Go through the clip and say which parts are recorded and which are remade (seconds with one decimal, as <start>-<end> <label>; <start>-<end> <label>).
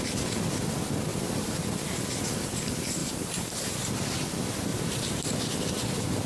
0.0-1.1 recorded; 1.1-2.0 remade; 2.0-3.0 recorded; 3.0-3.9 remade; 3.9-4.7 recorded; 4.7-5.3 remade; 5.3-6.3 recorded